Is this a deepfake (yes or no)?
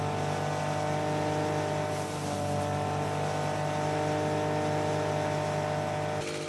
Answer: no